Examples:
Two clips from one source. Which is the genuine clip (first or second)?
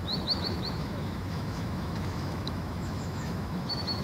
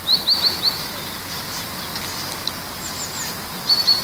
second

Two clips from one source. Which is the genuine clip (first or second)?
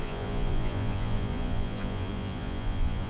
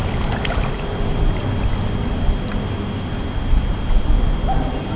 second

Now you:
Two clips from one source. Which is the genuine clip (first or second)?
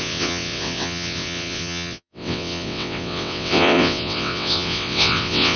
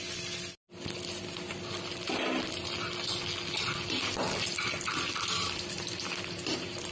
second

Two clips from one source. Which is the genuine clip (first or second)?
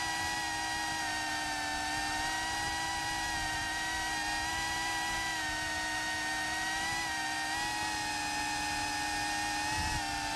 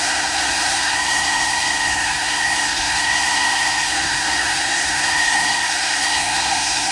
first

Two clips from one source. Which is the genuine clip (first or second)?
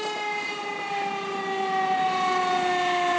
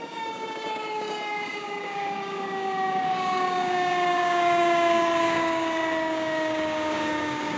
first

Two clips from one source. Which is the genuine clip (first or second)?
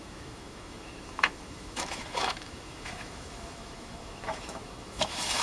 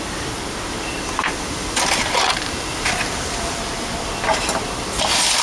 second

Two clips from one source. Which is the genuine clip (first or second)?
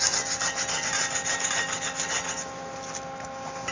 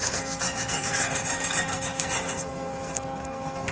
first